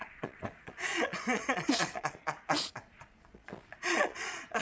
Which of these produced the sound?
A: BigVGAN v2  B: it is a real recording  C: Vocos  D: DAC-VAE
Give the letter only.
C